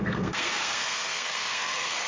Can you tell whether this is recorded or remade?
remade